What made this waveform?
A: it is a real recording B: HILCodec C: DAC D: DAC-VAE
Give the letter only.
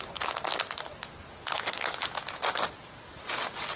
A